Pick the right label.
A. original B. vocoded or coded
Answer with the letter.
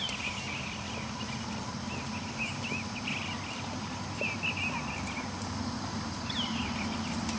B